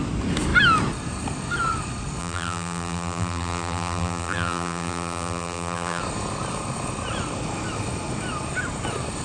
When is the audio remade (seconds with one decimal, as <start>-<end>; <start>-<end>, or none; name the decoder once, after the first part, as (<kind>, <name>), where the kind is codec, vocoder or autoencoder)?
2.2-6.0 (vocoder, BigVGAN v2)